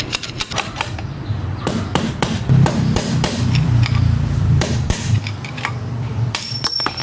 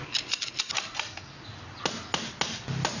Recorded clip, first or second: second